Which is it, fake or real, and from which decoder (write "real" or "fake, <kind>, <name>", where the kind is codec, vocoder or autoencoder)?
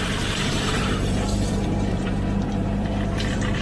fake, vocoder, BigVGAN v2